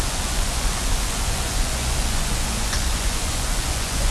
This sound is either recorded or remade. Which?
remade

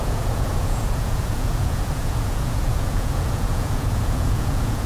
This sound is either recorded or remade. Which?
remade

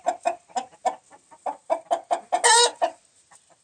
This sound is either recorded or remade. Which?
recorded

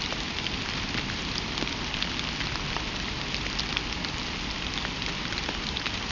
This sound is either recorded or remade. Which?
recorded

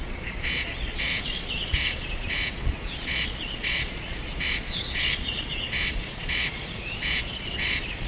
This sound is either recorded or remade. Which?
remade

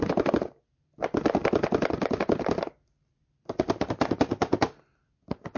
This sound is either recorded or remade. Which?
recorded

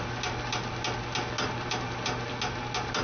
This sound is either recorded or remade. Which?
recorded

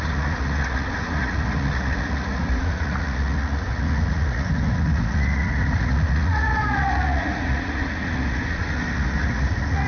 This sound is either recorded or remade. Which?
remade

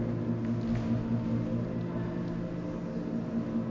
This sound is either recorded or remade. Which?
recorded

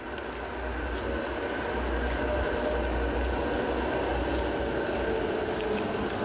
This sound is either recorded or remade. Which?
recorded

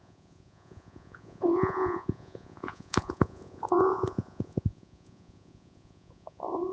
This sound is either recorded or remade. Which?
remade